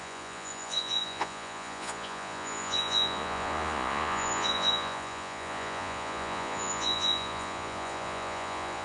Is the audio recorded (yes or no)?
no